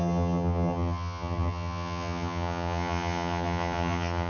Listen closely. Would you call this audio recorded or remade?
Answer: remade